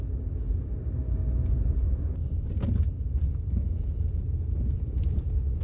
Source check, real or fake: real